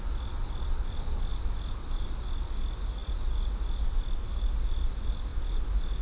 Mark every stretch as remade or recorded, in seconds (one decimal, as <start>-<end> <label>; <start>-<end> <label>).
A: 0.0-6.0 recorded